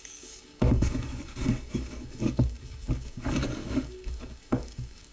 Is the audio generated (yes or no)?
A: yes